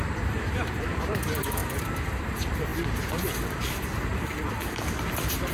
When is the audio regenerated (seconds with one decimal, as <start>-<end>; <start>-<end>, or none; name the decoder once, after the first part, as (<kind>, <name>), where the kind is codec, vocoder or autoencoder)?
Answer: 0.0-2.7 (vocoder, BigVGAN v2)